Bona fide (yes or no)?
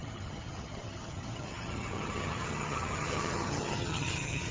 no